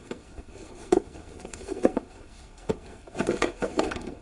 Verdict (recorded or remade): remade